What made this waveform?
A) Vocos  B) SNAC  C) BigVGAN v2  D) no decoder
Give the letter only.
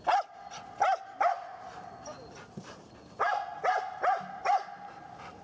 D